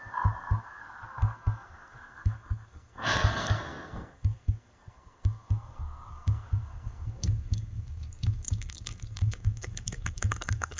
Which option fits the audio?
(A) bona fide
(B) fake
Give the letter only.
B